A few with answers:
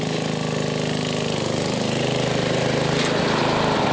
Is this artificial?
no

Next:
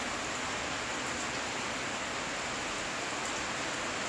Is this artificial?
no